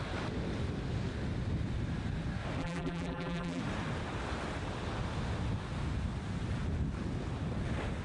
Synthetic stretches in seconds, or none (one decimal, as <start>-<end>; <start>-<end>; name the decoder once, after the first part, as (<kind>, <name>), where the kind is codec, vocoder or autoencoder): 2.6-3.6 (vocoder, BigVGAN v2)